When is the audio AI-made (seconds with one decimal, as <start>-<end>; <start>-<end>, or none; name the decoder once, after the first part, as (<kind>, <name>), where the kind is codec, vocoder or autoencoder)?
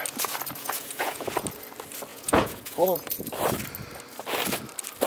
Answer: 0.6-1.3 (vocoder, Vocos); 2.1-3.2